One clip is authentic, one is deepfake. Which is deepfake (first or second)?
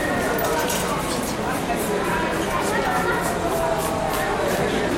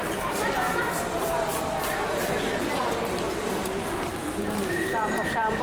second